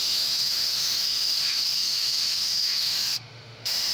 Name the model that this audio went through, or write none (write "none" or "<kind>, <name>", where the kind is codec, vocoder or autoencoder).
autoencoder, DAC-VAE